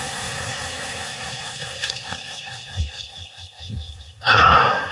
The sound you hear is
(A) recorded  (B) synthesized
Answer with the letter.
B